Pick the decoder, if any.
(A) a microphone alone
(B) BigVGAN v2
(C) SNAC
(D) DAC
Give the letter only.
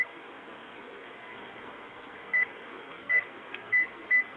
C